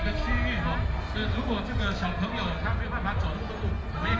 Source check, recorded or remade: recorded